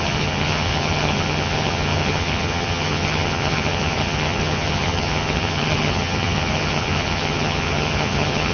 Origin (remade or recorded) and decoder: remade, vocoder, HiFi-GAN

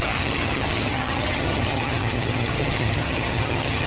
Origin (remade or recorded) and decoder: remade, vocoder, HiFi-GAN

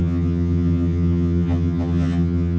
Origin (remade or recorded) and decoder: remade, vocoder, HiFi-GAN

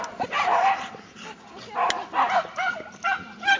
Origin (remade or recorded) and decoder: recorded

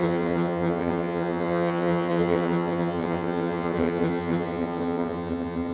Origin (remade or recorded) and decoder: remade, vocoder, HiFi-GAN